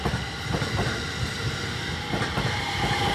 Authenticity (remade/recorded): recorded